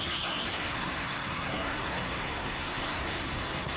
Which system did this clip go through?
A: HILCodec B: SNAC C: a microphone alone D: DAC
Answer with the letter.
B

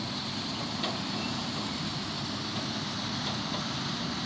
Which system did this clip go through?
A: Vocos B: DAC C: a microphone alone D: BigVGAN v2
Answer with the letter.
D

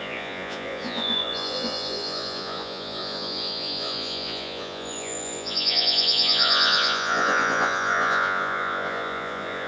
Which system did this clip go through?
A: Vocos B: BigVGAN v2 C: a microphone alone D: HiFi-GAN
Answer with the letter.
A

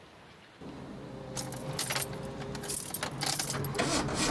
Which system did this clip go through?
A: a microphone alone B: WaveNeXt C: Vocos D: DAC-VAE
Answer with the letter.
A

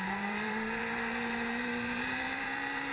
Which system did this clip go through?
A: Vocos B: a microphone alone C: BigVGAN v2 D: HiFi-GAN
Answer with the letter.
C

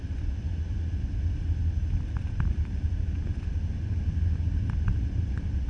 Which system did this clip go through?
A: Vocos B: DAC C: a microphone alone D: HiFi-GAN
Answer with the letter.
C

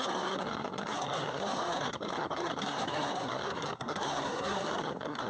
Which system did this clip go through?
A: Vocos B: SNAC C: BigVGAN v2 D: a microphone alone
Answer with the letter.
B